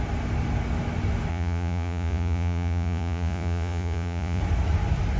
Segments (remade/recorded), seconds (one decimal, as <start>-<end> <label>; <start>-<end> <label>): 0.0-1.3 recorded; 1.3-4.4 remade; 4.4-5.2 recorded